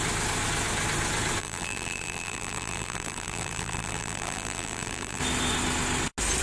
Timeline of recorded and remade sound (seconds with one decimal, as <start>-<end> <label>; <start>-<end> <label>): 0.0-1.4 recorded; 1.4-5.2 remade; 5.2-6.4 recorded